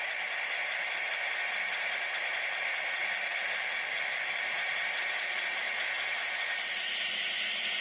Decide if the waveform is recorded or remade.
remade